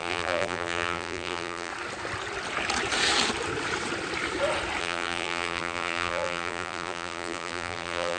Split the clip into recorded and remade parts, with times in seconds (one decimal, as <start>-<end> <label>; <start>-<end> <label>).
0.0-1.7 remade; 1.7-4.8 recorded; 4.8-8.2 remade